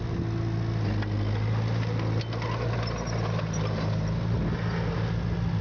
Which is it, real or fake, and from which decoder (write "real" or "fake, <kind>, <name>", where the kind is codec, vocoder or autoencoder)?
real